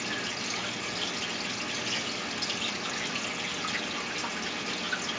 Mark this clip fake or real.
real